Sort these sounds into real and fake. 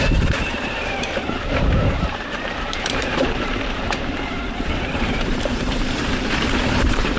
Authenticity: fake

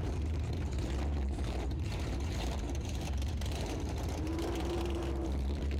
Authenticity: fake